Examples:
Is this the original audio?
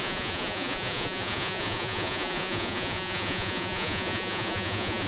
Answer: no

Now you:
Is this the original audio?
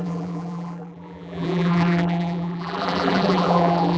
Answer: no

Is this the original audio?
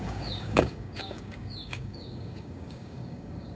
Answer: no